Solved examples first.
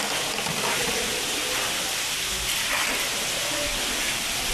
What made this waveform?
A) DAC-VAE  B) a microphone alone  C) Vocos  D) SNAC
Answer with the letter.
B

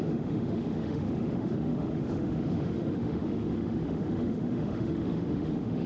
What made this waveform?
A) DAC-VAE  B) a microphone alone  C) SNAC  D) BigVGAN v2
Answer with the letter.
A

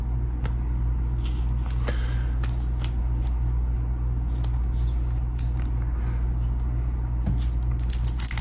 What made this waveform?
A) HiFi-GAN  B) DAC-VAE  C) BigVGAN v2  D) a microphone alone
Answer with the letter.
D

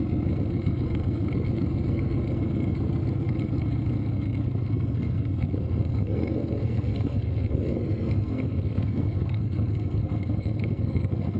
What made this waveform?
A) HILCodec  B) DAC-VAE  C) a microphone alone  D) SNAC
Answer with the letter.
D